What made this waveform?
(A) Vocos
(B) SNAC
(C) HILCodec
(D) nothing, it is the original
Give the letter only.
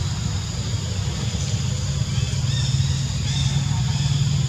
D